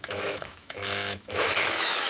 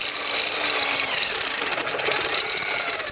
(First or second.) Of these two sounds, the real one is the second